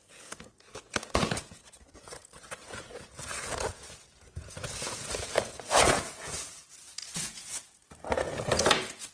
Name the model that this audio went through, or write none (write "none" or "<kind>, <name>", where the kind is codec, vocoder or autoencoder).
vocoder, Vocos